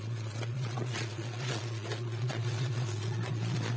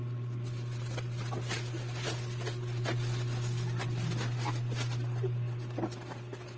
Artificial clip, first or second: first